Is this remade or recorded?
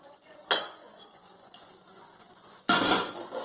remade